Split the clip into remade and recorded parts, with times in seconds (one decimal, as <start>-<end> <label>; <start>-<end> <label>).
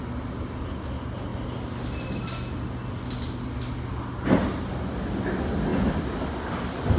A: 0.0-7.0 recorded